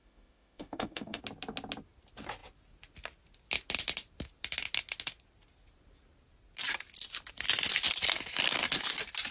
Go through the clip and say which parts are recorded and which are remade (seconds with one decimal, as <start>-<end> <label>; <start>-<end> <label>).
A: 0.0-1.2 remade; 1.2-9.3 recorded